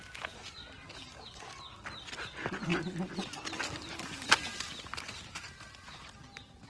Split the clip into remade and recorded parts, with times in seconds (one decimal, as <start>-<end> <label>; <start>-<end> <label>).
0.0-6.7 recorded